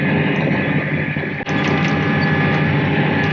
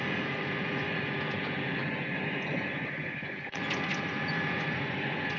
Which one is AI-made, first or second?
second